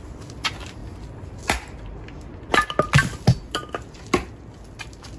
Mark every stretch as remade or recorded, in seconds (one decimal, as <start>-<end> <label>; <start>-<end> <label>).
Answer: 0.0-5.2 recorded